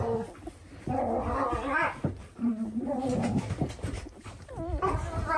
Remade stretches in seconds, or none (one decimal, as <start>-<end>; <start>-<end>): 2.2-4.5